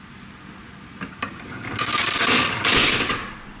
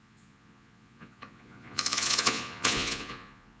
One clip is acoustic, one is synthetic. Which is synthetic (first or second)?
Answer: second